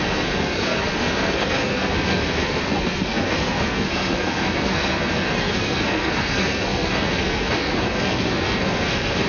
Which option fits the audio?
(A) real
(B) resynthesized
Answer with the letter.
B